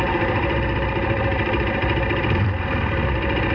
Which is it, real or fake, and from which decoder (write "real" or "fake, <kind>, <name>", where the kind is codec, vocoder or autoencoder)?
fake, vocoder, BigVGAN v2